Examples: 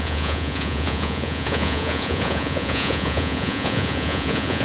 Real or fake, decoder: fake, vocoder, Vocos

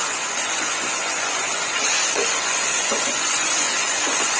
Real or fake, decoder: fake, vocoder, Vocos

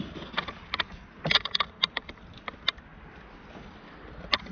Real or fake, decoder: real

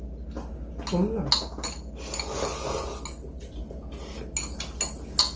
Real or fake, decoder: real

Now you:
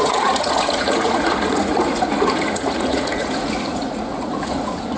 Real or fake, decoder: fake, vocoder, Vocos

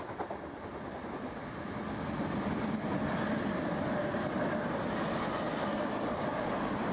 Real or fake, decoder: real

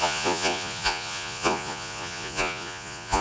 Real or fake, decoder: fake, vocoder, Vocos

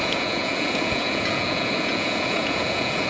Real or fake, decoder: fake, vocoder, Vocos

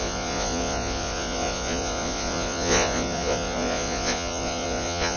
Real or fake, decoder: fake, vocoder, Vocos